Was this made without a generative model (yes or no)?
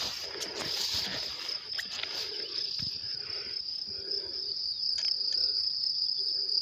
yes